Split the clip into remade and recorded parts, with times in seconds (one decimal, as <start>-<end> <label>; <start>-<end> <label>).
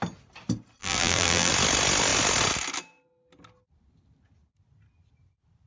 0.0-0.8 recorded; 0.8-1.5 remade; 1.5-5.7 recorded